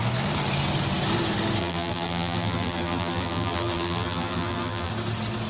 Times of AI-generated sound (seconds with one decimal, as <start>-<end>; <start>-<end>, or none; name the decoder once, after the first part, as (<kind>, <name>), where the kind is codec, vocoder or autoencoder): 1.6-4.9 (vocoder, BigVGAN v2)